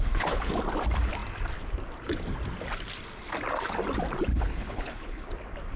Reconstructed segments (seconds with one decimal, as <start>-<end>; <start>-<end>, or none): 0.0-0.6; 4.3-5.3